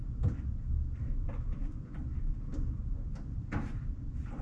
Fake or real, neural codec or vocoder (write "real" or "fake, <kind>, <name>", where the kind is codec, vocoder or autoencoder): real